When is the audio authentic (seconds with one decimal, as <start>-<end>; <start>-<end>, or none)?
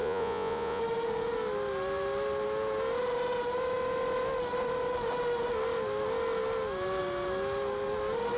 0.8-8.4